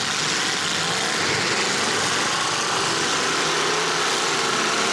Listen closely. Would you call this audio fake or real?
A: real